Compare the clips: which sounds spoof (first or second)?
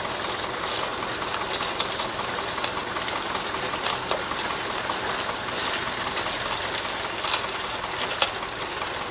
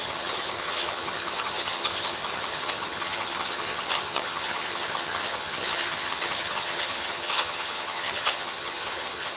second